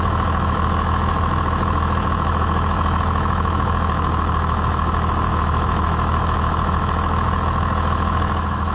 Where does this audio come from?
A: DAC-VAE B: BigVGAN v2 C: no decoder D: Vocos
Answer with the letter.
A